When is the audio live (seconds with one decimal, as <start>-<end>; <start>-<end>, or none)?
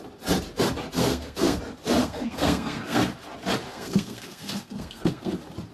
0.0-1.0; 1.6-2.0; 3.0-3.7; 5.3-5.7